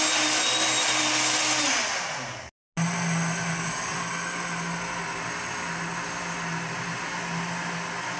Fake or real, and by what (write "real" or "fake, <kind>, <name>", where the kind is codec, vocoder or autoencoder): real